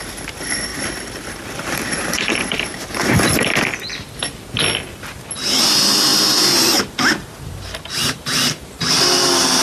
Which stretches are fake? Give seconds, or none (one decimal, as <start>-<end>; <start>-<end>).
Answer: 0.7-3.5